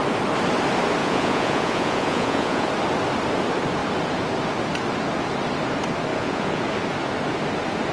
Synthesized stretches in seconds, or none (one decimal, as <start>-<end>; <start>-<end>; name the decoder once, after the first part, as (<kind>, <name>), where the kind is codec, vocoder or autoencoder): 1.0-2.7 (vocoder, Vocos); 6.1-6.6